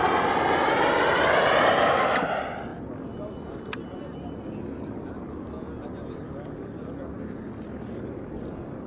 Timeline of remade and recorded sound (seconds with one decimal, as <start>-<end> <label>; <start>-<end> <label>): 0.0-8.9 recorded